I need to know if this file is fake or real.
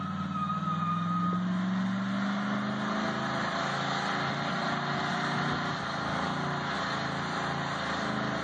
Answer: real